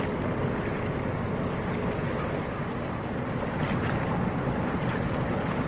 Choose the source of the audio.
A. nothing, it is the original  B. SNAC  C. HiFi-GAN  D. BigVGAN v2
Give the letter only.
A